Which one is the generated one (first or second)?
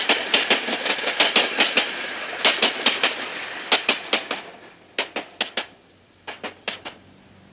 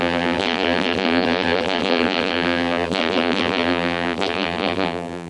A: second